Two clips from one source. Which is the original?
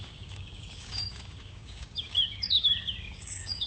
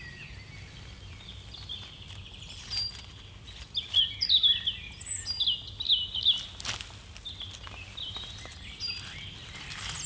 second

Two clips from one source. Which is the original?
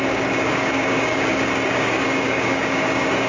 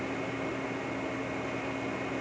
second